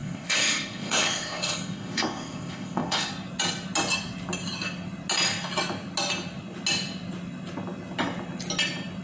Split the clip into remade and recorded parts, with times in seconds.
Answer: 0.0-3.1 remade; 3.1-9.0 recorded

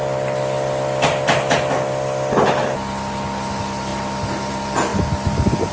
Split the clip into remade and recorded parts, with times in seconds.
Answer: 0.0-5.7 recorded

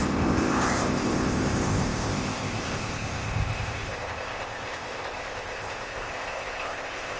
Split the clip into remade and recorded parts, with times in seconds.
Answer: 0.0-7.2 remade